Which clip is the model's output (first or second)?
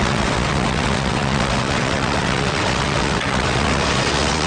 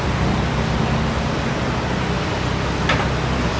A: first